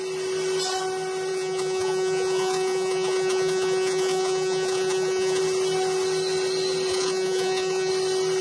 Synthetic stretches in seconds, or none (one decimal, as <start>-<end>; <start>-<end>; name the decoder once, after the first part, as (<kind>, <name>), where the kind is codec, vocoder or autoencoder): 1.3-5.4 (vocoder, Vocos); 6.9-7.9

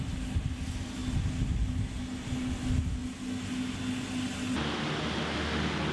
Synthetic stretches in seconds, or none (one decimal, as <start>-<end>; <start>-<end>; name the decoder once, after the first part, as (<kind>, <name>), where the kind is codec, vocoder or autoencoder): none